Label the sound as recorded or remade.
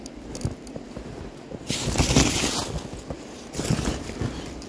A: recorded